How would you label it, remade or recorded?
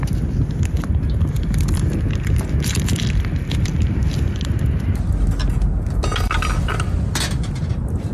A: recorded